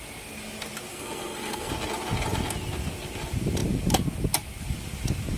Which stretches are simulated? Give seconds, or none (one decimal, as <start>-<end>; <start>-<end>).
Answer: 0.9-1.7